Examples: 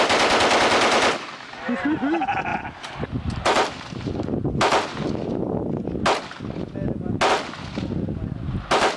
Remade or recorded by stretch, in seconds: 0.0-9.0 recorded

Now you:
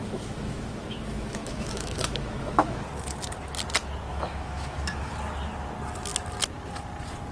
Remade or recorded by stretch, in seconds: 0.0-2.8 remade; 2.8-4.1 recorded; 4.1-5.1 remade; 5.1-7.3 recorded

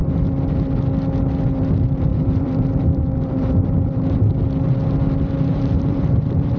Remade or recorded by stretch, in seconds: 0.0-2.1 recorded; 2.1-4.3 remade; 4.3-5.5 recorded; 5.5-6.6 remade

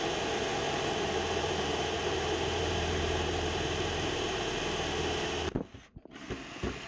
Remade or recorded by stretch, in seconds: 0.0-0.5 recorded; 0.5-4.6 remade; 4.6-6.9 recorded

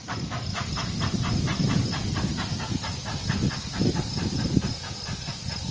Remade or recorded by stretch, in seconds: 0.0-3.0 remade; 3.0-3.8 recorded; 3.8-5.7 remade

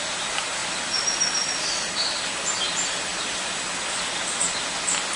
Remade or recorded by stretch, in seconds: 0.0-5.2 recorded